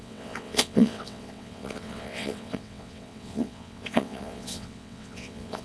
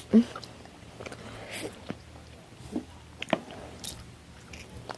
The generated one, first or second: first